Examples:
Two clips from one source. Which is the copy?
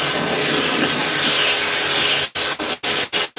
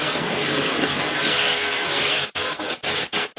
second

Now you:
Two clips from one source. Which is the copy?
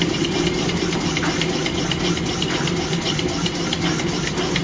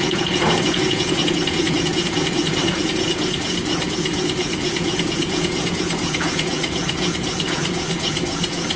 second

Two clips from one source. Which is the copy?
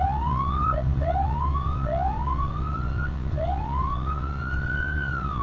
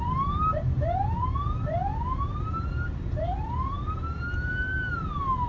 first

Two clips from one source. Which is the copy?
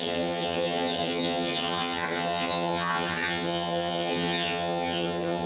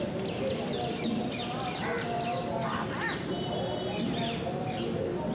first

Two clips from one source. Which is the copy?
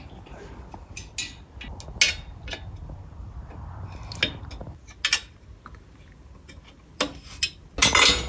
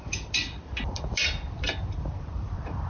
second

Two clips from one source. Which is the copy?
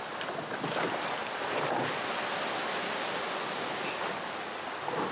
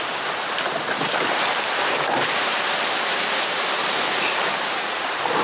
second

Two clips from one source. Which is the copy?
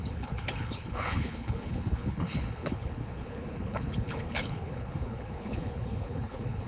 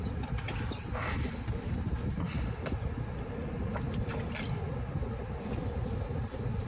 first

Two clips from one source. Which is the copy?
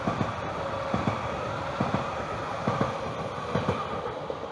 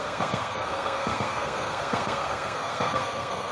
second